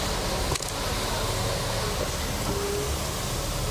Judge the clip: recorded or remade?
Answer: recorded